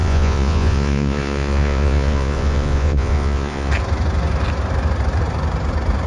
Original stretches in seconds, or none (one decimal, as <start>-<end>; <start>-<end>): 3.7-6.1